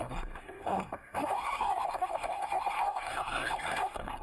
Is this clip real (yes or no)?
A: no